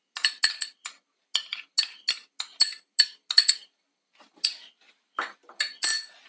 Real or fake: real